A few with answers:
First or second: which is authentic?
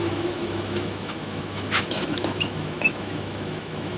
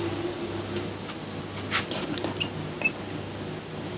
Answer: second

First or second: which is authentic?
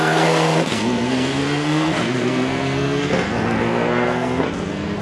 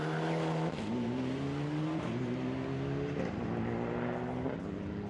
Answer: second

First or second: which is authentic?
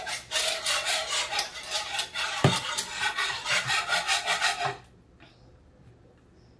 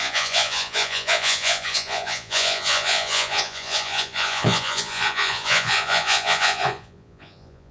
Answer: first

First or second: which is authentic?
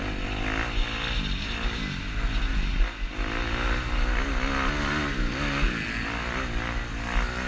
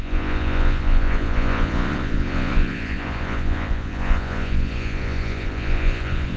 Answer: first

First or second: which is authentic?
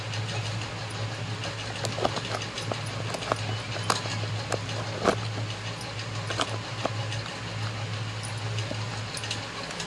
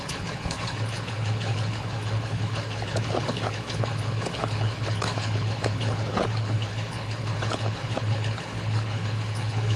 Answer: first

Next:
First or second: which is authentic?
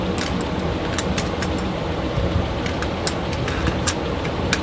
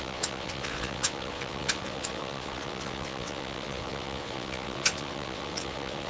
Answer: first